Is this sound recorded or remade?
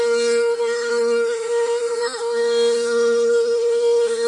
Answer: remade